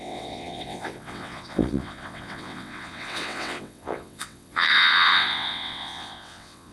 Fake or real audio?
fake